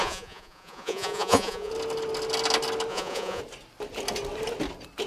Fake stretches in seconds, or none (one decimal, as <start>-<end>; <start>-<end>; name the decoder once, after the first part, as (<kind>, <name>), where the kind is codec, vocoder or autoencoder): 0.0-1.7 (vocoder, Vocos); 2.9-3.4

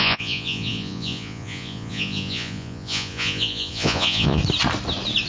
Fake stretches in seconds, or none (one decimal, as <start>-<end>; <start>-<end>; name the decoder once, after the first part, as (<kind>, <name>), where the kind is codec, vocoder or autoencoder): 0.0-4.4 (vocoder, Vocos)

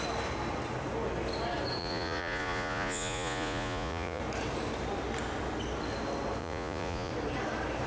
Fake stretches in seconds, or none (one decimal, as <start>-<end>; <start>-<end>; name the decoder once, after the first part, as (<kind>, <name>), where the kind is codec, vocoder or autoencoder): 1.8-4.2 (vocoder, Vocos); 6.4-7.1

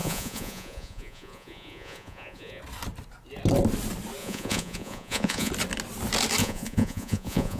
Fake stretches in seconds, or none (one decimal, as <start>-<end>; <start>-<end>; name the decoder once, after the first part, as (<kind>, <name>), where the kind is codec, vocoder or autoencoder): 0.0-2.6 (vocoder, Vocos); 4.2-5.5; 6.4-7.6

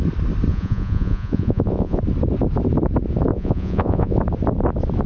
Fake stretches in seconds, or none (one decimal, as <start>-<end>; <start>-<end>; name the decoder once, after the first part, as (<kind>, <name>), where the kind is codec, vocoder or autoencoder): 0.5-2.0 (vocoder, Vocos); 3.3-4.2

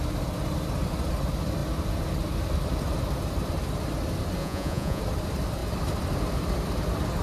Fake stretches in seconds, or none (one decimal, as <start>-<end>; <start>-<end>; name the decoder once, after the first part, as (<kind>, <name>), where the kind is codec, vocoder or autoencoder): 4.4-5.0 (vocoder, Vocos)